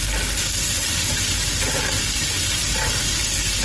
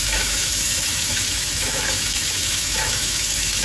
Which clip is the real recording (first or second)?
first